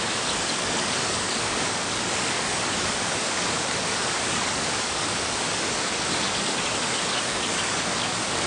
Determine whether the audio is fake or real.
fake